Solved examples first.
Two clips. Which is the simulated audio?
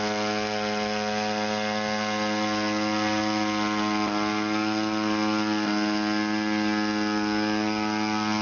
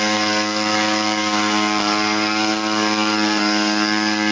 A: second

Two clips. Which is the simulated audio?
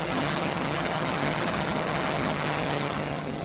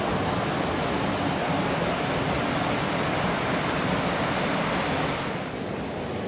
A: first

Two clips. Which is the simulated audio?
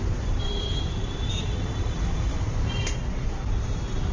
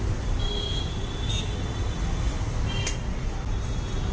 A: first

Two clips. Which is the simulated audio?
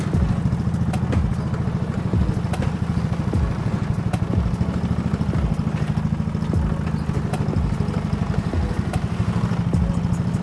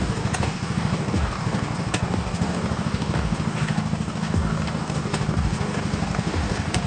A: second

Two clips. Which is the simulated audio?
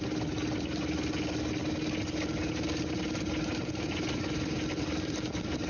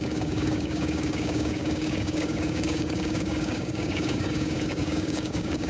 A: second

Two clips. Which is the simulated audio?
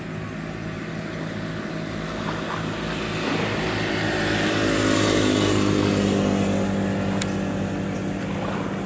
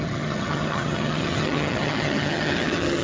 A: second